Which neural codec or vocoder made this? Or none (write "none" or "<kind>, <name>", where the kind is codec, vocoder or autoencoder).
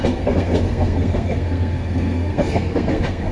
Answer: codec, SNAC